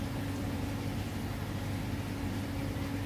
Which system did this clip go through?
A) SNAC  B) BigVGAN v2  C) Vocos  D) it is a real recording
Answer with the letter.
D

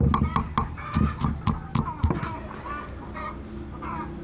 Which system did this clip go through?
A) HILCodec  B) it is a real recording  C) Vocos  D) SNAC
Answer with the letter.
B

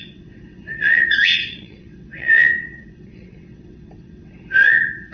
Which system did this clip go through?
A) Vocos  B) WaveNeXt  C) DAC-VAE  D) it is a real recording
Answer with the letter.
B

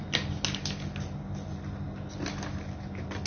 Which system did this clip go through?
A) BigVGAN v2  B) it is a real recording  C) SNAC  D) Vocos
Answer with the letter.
B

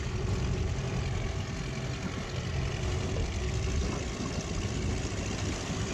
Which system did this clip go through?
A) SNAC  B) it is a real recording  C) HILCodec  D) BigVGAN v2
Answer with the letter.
B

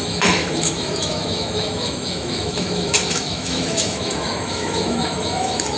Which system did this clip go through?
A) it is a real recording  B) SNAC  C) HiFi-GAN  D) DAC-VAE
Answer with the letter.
D